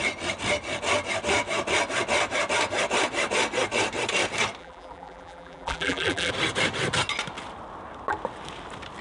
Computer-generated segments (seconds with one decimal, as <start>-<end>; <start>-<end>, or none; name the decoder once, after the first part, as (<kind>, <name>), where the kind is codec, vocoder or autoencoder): 4.6-6.3 (vocoder, BigVGAN v2)